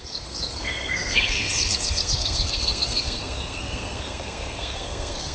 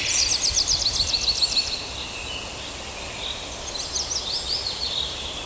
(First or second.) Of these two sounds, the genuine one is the second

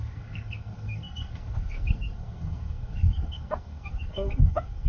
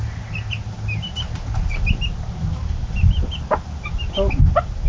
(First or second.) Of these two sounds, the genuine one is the second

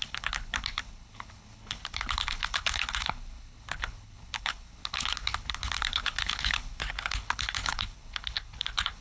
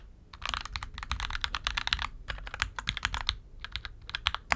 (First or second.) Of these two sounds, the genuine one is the second